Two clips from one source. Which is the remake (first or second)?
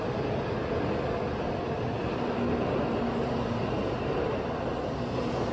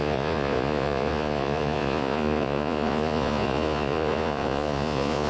second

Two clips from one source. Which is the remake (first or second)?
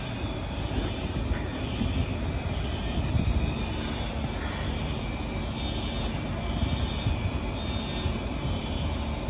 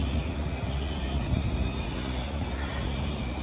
second